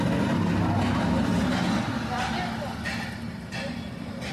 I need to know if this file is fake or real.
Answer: real